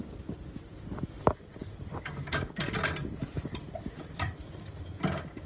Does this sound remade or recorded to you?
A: recorded